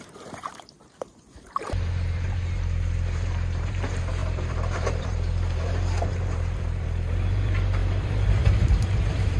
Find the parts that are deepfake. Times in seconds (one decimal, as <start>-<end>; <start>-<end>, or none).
0.0-9.4